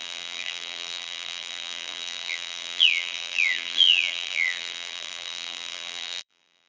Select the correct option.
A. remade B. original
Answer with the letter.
A